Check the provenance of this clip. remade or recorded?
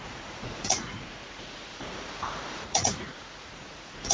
remade